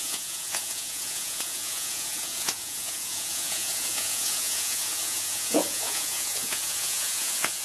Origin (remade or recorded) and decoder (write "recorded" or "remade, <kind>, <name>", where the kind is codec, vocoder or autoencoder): remade, vocoder, Vocos